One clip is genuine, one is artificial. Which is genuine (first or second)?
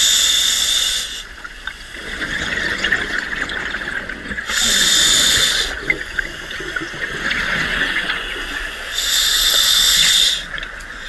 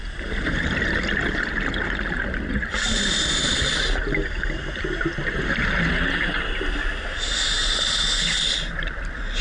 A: second